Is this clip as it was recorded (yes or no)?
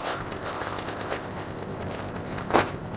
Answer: no